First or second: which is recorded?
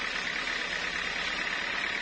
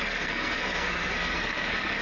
first